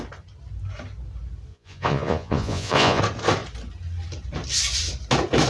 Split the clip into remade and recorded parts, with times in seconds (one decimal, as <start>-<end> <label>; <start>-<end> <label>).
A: 0.0-1.5 recorded; 1.5-3.0 remade; 3.0-5.5 recorded